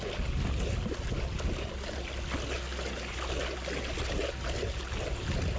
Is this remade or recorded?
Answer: recorded